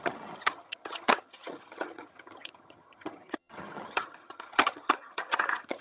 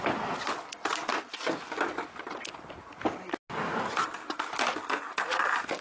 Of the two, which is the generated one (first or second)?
first